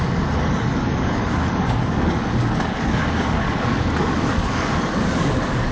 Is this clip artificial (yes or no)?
yes